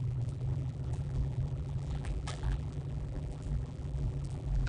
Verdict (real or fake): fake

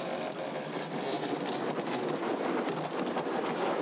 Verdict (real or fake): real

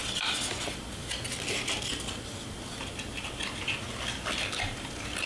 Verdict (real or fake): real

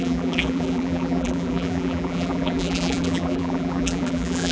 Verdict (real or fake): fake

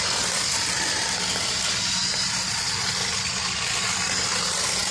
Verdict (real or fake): real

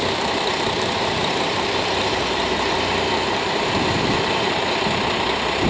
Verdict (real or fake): fake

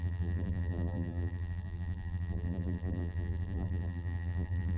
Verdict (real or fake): fake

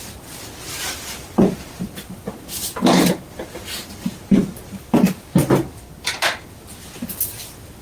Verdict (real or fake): real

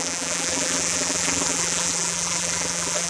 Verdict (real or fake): fake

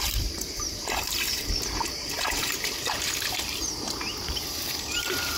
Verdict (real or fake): fake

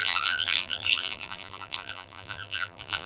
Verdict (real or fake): fake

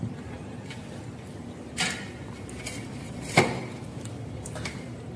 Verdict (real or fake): fake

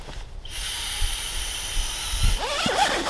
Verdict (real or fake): fake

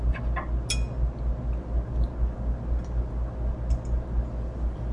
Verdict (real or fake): real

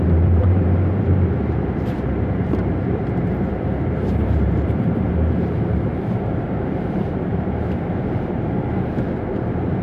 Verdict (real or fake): fake